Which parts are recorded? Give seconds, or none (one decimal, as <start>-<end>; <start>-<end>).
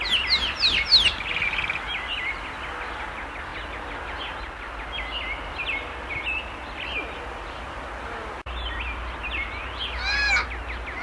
0.0-11.0